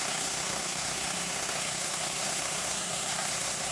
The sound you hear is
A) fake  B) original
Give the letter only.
A